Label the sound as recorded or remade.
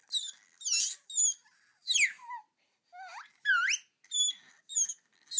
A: recorded